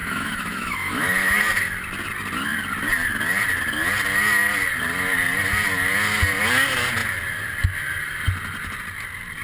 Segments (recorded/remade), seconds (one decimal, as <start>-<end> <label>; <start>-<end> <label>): 0.0-1.5 remade; 1.5-9.4 recorded